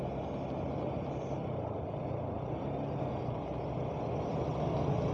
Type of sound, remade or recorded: recorded